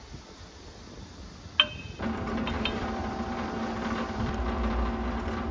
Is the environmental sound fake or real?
real